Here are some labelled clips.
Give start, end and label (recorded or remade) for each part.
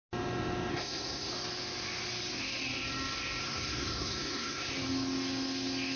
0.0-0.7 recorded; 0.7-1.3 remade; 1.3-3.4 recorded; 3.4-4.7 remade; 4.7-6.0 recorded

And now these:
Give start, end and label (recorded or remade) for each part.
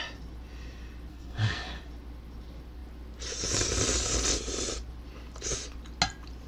0.0-1.1 recorded; 1.1-1.8 remade; 1.8-6.5 recorded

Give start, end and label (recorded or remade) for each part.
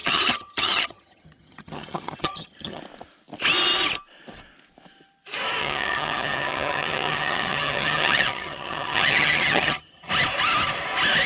0.0-2.8 remade; 2.8-5.6 recorded; 5.6-10.1 remade; 10.1-11.3 recorded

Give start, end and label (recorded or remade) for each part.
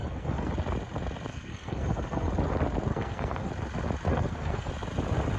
0.0-0.5 remade; 0.5-1.3 recorded; 1.3-2.3 remade; 2.3-2.9 recorded; 2.9-3.5 remade; 3.5-4.1 recorded; 4.1-4.7 remade; 4.7-5.4 recorded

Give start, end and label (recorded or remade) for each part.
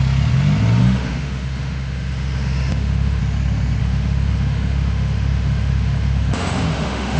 0.0-0.8 recorded; 0.8-3.2 remade; 3.2-3.8 recorded; 3.8-7.2 remade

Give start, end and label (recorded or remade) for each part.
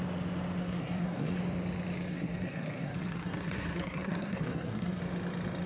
0.0-0.6 recorded; 0.6-1.4 remade; 1.4-2.1 recorded; 2.1-5.0 remade; 5.0-5.7 recorded